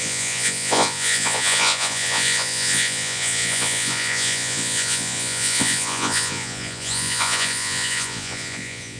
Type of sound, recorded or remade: remade